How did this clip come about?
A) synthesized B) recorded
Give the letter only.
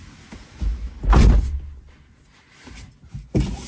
B